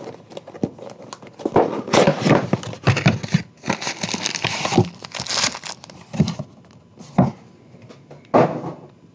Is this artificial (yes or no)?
no